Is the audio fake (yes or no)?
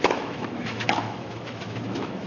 yes